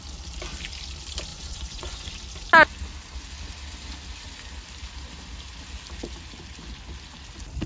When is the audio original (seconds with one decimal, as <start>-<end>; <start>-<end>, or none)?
0.0-1.3; 2.1-7.7